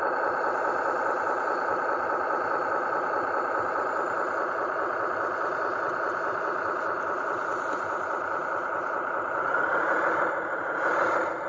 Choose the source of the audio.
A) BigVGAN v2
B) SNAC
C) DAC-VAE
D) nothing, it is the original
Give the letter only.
A